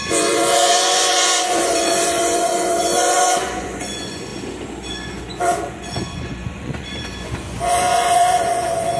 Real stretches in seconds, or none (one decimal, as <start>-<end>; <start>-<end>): 4.3-4.9